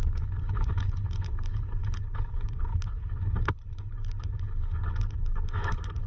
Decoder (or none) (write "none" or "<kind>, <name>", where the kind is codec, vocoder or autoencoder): codec, HILCodec